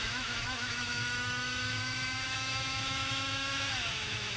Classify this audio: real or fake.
fake